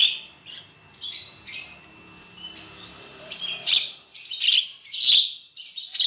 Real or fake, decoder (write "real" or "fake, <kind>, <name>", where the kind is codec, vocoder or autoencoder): real